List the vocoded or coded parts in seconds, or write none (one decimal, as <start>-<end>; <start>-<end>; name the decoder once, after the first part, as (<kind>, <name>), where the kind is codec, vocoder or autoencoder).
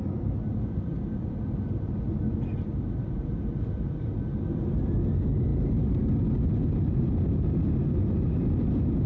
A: none